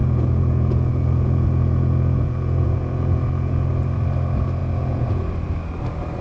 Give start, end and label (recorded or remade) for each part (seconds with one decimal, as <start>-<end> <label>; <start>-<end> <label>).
0.0-3.7 remade; 3.7-4.6 recorded; 4.6-5.2 remade; 5.2-6.2 recorded